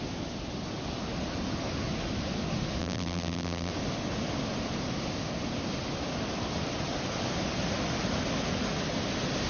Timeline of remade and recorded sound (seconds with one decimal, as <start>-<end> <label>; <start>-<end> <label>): 0.0-2.8 recorded; 2.8-3.7 remade; 3.7-9.5 recorded